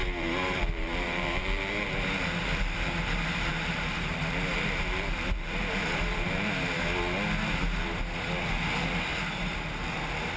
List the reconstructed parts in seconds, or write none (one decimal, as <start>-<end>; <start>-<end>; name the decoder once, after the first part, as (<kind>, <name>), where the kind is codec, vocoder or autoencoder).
0.0-2.9 (vocoder, BigVGAN v2); 3.5-4.1; 4.5-6.8